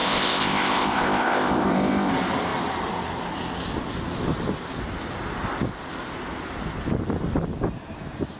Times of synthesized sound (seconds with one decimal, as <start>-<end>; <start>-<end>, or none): 0.0-2.1

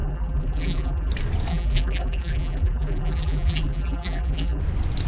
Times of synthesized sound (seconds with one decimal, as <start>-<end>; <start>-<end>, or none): 0.0-1.1; 1.5-4.6